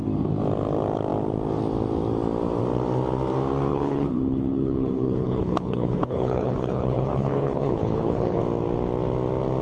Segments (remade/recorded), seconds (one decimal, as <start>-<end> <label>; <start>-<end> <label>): 0.0-3.7 recorded; 3.7-8.4 remade; 8.4-9.6 recorded